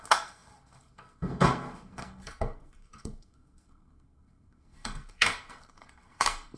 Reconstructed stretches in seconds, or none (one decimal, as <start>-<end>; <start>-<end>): 0.0-6.6